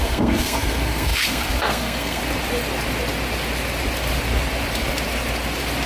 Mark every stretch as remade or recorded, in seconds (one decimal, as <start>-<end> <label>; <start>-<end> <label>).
0.0-2.2 remade; 2.2-5.9 recorded